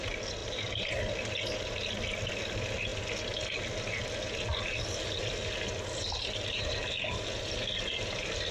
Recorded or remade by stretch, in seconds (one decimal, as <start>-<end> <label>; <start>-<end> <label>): 0.0-0.4 recorded; 0.4-1.3 remade; 1.3-8.5 recorded